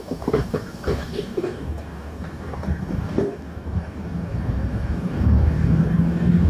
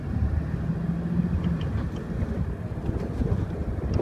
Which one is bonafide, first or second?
second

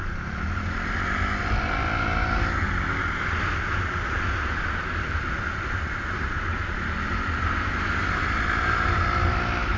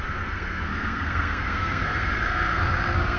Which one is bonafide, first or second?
first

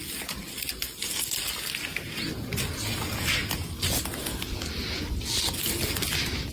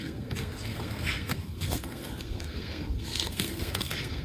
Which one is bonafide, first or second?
first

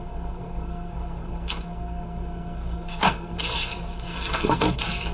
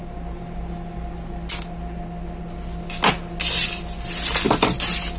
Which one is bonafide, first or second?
second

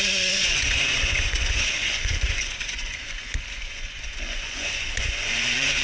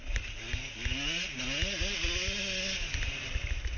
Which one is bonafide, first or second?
second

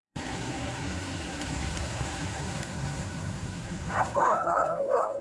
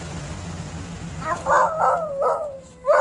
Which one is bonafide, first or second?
second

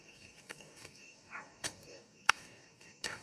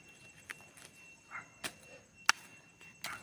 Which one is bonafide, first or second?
second